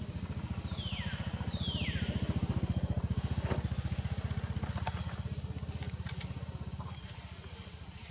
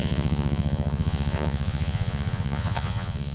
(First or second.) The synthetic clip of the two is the second